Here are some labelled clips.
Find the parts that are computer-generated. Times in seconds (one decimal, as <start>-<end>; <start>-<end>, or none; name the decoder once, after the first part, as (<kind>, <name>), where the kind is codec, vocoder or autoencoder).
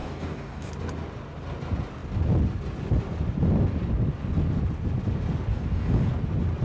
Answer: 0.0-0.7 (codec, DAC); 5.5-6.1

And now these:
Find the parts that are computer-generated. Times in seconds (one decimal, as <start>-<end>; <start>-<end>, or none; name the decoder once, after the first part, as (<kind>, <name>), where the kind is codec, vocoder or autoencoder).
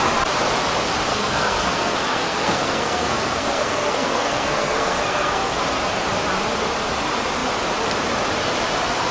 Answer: 1.1-5.6 (codec, SNAC)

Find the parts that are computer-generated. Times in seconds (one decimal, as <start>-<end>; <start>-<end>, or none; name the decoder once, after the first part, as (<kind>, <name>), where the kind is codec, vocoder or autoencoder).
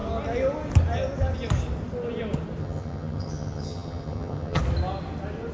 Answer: 2.6-4.6 (vocoder, HiFi-GAN)